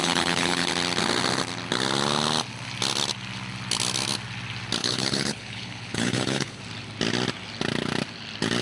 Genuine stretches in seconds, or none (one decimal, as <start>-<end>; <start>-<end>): 0.7-4.8; 6.6-8.6